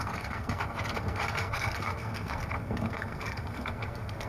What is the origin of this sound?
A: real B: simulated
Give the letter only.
B